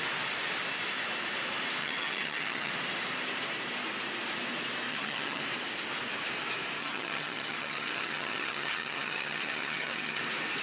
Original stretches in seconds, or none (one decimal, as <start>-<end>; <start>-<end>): 0.0-1.8; 2.7-4.9; 5.4-6.8; 10.2-10.6